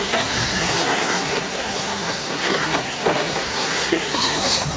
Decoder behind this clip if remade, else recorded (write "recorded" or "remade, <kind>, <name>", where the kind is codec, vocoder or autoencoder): remade, codec, SNAC